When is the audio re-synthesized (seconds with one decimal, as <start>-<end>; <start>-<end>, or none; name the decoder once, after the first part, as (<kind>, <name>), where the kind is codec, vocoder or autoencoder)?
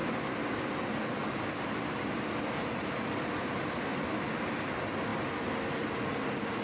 none